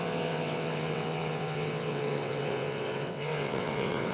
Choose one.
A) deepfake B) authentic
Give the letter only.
A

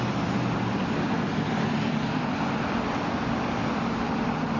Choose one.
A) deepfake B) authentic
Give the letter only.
A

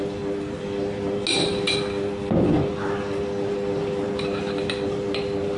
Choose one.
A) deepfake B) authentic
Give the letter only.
B